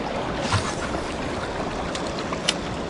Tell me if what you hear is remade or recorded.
recorded